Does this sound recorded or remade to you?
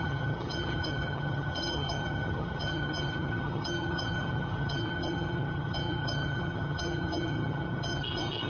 remade